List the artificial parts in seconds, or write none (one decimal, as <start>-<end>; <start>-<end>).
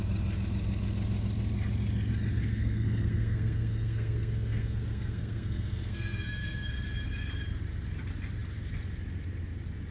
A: 2.4-6.7